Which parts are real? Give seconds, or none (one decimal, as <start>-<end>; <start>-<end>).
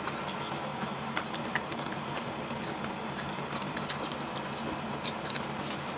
0.0-0.7; 3.9-6.0